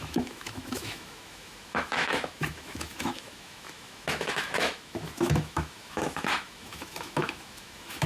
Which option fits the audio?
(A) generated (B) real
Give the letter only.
A